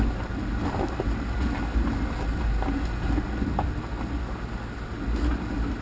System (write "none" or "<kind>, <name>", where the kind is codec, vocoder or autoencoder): none